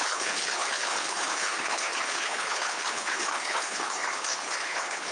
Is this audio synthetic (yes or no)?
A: yes